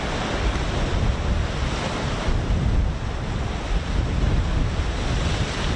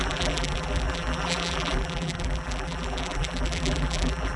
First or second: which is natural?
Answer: first